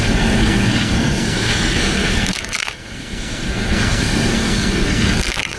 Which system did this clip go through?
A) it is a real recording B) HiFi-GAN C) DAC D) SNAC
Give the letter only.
D